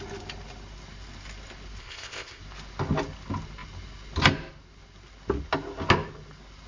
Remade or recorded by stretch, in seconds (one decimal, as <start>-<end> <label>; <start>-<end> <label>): 0.0-1.8 recorded; 1.8-2.4 remade; 2.4-6.7 recorded